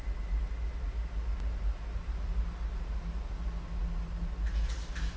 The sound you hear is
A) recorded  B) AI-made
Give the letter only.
A